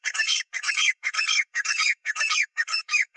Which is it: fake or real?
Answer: fake